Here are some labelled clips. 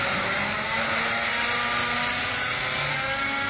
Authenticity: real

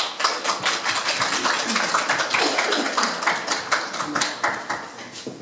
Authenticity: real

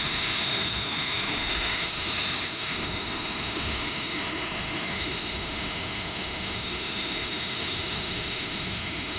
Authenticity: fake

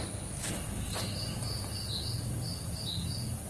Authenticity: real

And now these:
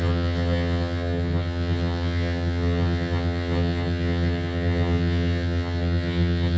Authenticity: fake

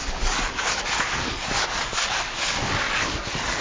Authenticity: fake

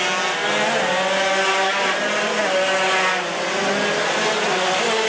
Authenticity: real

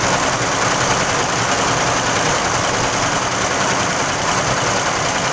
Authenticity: real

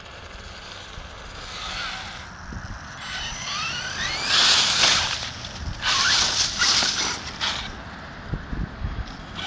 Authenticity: real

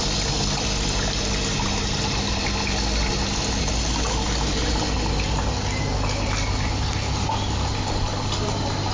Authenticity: real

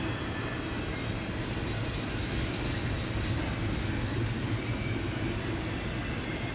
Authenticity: real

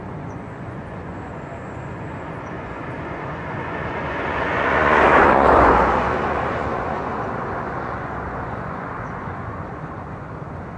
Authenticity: fake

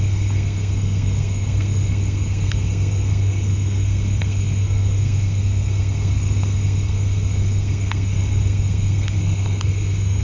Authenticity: fake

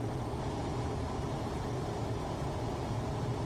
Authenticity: real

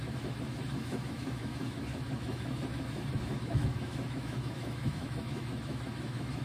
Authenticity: fake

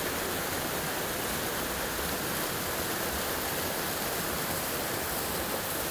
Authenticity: real